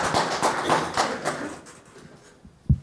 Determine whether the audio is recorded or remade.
recorded